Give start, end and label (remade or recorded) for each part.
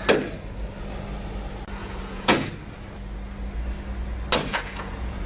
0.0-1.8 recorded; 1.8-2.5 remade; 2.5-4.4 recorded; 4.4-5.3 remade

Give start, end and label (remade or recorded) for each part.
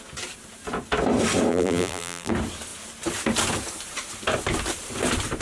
0.0-1.5 recorded; 1.5-2.3 remade; 2.3-5.4 recorded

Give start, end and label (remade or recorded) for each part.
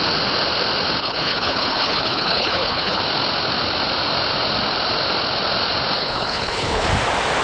0.0-1.0 recorded; 1.0-3.0 remade; 3.0-6.0 recorded; 6.0-6.9 remade; 6.9-7.4 recorded